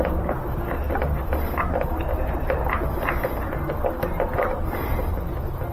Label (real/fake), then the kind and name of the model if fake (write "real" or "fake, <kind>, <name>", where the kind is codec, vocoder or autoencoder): real